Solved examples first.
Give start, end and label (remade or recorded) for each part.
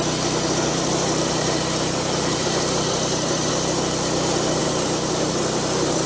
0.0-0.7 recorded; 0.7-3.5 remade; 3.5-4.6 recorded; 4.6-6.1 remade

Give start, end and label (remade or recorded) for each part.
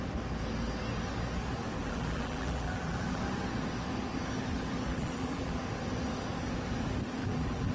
0.0-1.8 recorded; 1.8-3.2 remade; 3.2-4.9 recorded; 4.9-5.6 remade; 5.6-7.2 recorded; 7.2-7.7 remade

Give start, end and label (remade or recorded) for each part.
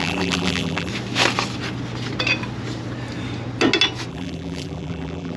0.0-0.9 remade; 0.9-4.1 recorded; 4.1-5.4 remade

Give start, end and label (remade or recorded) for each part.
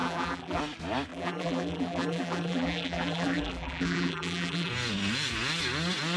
0.0-0.6 remade; 0.6-1.1 recorded; 1.1-4.7 remade; 4.7-6.2 recorded